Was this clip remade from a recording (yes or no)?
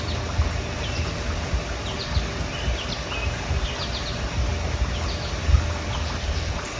no